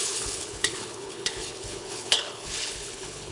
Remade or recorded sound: remade